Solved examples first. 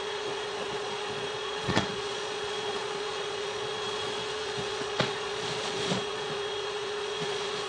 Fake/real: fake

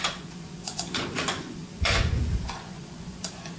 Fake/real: fake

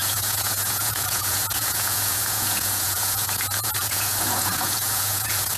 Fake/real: fake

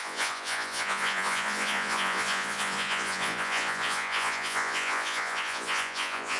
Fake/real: fake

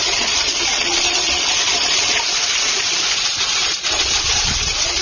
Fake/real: fake